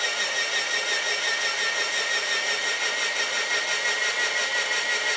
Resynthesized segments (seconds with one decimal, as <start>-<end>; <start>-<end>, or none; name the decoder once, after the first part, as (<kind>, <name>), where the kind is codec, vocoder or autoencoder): none